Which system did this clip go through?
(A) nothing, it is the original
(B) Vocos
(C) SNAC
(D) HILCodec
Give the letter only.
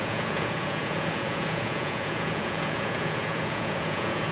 B